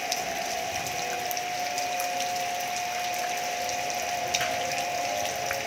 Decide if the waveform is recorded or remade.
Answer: recorded